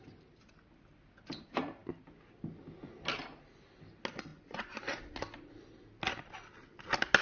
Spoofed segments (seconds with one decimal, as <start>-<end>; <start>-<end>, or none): 4.3-4.8